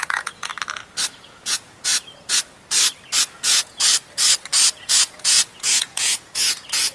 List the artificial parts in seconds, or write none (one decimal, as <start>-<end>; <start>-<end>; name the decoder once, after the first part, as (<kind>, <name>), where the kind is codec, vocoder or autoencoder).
0.0-0.5 (vocoder, Vocos); 1.1-1.9; 3.2-3.9; 4.7-6.9